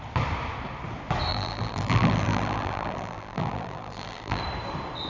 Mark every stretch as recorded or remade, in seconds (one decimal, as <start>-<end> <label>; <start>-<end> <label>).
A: 0.0-1.3 recorded; 1.3-4.4 remade; 4.4-5.1 recorded